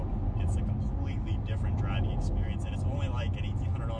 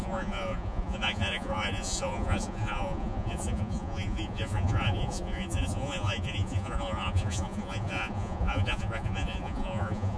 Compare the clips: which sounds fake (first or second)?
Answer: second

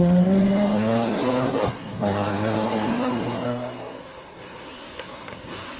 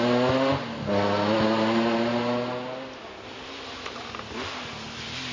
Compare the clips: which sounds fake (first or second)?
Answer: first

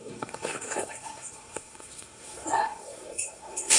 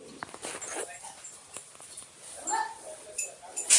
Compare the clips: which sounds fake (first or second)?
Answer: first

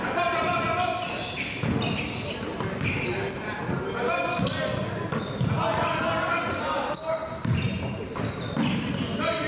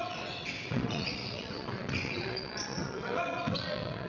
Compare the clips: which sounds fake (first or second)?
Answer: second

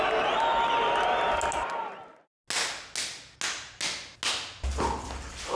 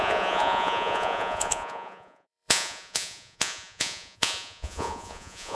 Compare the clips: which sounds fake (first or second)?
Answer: second